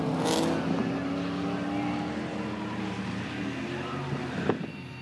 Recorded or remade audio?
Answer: recorded